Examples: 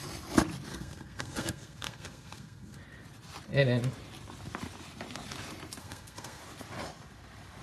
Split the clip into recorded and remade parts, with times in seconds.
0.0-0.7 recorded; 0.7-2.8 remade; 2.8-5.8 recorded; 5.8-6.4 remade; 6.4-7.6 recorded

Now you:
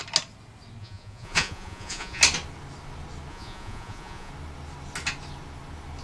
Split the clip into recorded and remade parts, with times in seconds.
0.0-0.8 recorded; 0.8-2.2 remade; 2.2-3.3 recorded; 3.3-4.3 remade; 4.3-6.0 recorded

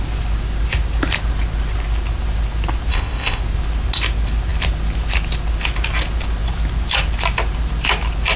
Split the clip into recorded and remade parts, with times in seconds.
0.0-2.9 recorded; 2.9-3.4 remade; 3.4-8.4 recorded

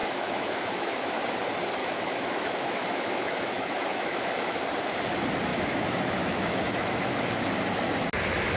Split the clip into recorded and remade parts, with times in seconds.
0.0-1.2 remade; 1.2-1.8 recorded; 1.8-4.6 remade; 4.6-5.5 recorded; 5.5-7.1 remade; 7.1-8.6 recorded

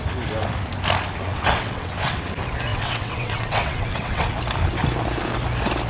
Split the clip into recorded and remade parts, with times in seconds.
0.0-1.3 recorded; 1.3-2.3 remade; 2.3-2.7 recorded; 2.7-4.3 remade; 4.3-5.9 recorded

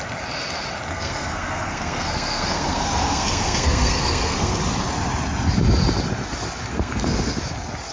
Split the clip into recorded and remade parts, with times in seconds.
0.0-0.9 recorded; 0.9-4.5 remade; 4.5-6.7 recorded; 6.7-7.4 remade; 7.4-7.9 recorded

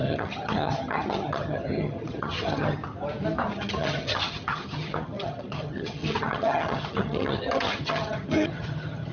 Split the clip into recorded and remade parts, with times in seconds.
0.0-2.8 remade; 2.8-3.5 recorded; 3.5-9.1 remade